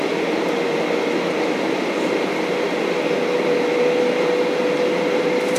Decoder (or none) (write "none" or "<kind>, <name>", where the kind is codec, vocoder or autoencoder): none